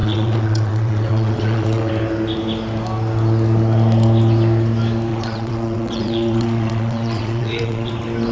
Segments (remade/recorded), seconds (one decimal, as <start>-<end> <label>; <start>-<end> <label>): 0.0-1.9 remade; 1.9-5.1 recorded; 5.1-7.9 remade; 7.9-8.3 recorded